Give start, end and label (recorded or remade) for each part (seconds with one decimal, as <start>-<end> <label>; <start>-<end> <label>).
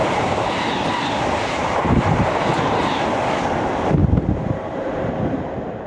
0.0-2.5 remade; 2.5-4.0 recorded; 4.0-5.9 remade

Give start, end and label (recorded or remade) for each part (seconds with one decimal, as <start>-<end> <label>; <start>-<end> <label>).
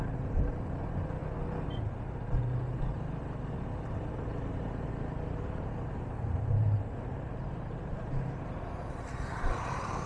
0.0-1.2 remade; 1.2-3.6 recorded; 3.6-10.1 remade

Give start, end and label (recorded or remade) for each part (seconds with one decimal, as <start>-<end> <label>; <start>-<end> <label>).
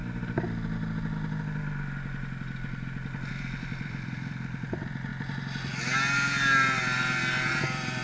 0.0-3.3 recorded; 3.3-5.1 remade; 5.1-7.6 recorded; 7.6-8.0 remade